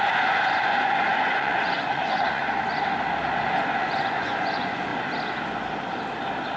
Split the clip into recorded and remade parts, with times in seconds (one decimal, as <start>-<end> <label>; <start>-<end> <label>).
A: 0.0-2.4 remade; 2.4-3.8 recorded; 3.8-4.9 remade; 4.9-6.6 recorded